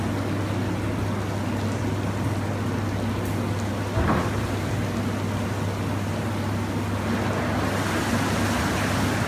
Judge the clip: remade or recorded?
recorded